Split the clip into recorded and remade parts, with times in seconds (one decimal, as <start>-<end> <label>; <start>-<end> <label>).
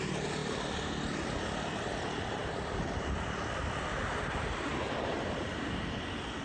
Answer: 0.0-6.4 recorded